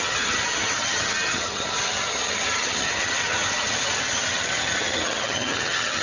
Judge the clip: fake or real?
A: fake